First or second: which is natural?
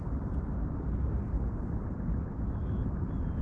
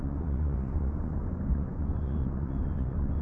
first